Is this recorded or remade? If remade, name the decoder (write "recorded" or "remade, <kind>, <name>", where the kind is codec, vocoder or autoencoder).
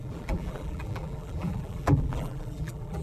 remade, vocoder, BigVGAN v2